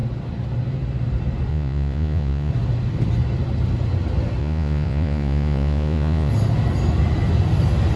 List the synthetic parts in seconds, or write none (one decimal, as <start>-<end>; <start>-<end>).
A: 1.5-2.5; 4.4-6.3